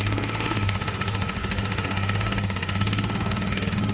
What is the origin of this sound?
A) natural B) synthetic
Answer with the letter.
B